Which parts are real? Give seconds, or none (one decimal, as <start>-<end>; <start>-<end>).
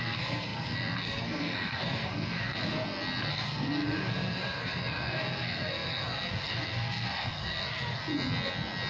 2.6-3.3; 8.0-8.9